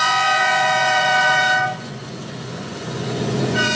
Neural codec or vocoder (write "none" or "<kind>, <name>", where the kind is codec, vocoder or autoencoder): vocoder, Vocos